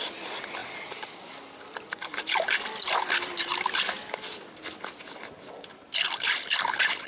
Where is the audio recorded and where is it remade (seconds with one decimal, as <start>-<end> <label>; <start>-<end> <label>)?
0.0-0.6 recorded; 0.6-2.2 remade; 2.2-7.1 recorded